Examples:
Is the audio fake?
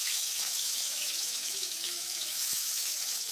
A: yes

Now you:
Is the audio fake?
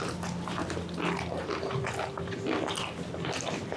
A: no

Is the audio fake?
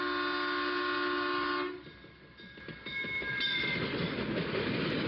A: no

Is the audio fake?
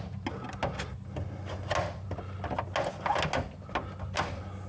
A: no